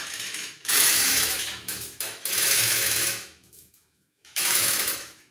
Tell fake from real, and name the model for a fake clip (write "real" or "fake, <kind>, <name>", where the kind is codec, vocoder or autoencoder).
fake, autoencoder, DAC-VAE